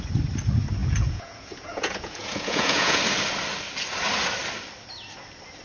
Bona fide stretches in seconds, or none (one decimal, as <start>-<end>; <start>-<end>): 0.0-0.8; 3.0-5.6